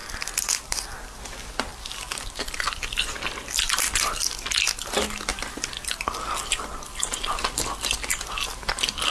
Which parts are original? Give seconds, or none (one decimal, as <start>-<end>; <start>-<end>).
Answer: 1.2-1.7; 3.2-5.3; 6.3-9.1